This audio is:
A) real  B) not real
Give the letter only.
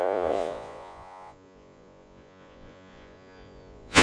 B